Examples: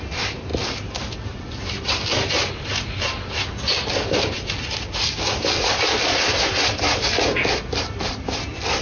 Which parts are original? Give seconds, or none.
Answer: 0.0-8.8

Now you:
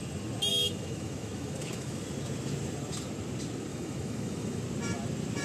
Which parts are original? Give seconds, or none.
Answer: 0.0-0.5; 2.0-3.7; 4.6-5.4

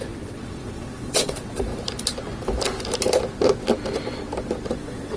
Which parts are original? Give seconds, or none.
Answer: 1.7-4.8

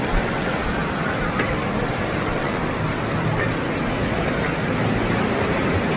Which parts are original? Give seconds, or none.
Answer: 0.6-2.2; 2.6-6.0

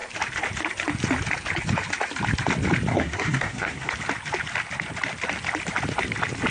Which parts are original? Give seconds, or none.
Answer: 0.0-2.9; 3.9-6.5